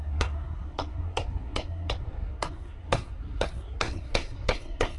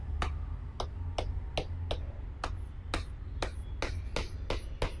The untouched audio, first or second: second